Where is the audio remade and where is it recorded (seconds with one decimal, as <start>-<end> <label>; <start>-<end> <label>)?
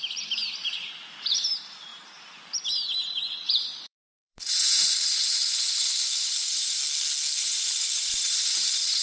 0.0-6.8 remade; 6.8-7.4 recorded; 7.4-9.0 remade